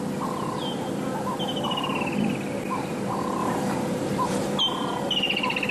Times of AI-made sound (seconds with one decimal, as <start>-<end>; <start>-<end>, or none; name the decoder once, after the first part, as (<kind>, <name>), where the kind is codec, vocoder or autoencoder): 0.6-1.9 (vocoder, BigVGAN v2); 3.4-4.6